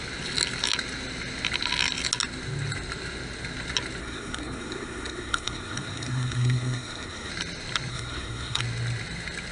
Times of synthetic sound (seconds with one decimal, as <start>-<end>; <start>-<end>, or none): 4.0-7.3; 7.9-8.6